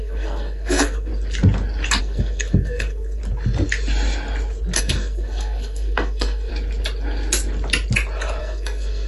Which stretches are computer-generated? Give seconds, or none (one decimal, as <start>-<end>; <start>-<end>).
0.0-1.1; 2.0-3.2; 4.8-6.5; 8.4-9.1